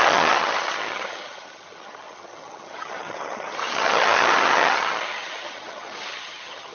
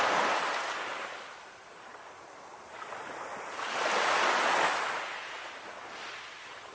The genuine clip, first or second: second